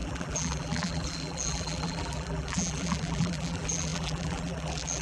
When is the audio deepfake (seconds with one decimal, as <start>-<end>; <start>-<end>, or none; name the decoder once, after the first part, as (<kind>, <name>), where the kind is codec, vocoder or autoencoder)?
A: 0.0-5.0 (vocoder, BigVGAN v2)